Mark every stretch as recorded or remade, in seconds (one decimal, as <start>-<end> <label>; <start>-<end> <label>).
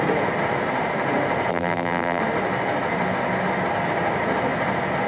0.0-1.5 recorded; 1.5-2.2 remade; 2.2-5.1 recorded